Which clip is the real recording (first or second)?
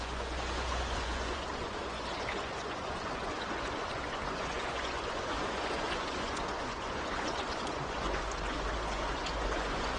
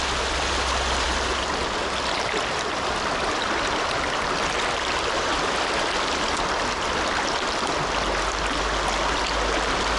second